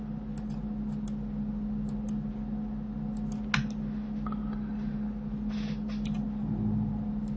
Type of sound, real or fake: real